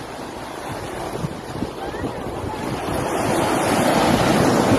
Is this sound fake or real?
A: real